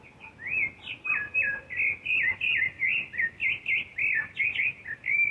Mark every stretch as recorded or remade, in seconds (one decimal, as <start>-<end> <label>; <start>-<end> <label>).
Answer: 0.0-2.1 recorded; 2.1-5.3 remade

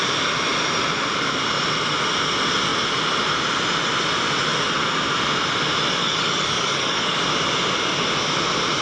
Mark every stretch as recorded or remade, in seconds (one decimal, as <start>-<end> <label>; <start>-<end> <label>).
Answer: 0.0-6.0 recorded; 6.0-7.2 remade; 7.2-8.8 recorded

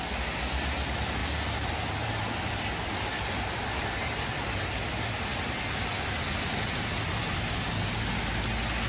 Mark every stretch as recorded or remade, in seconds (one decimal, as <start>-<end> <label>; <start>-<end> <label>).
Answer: 0.0-8.9 recorded

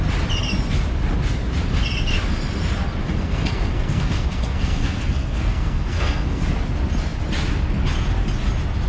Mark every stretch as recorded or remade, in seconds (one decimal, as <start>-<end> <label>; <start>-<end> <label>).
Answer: 0.0-3.0 recorded; 3.0-6.4 remade; 6.4-8.9 recorded

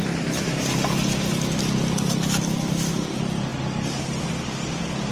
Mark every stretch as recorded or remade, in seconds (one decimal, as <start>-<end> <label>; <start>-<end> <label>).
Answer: 0.0-5.1 recorded

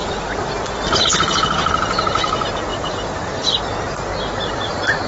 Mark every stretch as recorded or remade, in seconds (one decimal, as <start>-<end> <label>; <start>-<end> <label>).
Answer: 0.0-2.7 recorded; 2.7-3.6 remade; 3.6-5.1 recorded

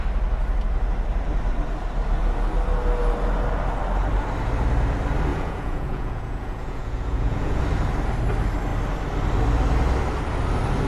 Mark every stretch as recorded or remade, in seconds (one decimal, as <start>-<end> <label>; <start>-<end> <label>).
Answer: 0.0-5.3 recorded; 5.3-7.6 remade; 7.6-10.9 recorded